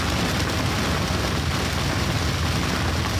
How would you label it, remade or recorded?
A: recorded